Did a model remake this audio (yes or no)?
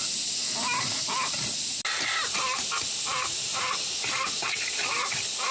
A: no